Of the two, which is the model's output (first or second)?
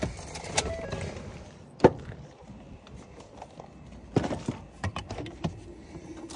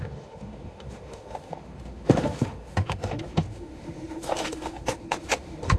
second